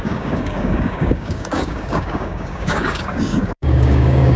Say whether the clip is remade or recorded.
remade